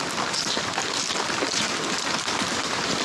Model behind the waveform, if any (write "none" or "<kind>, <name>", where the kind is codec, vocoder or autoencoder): none